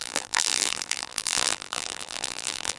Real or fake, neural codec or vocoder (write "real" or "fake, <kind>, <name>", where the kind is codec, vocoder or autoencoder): fake, vocoder, BigVGAN v2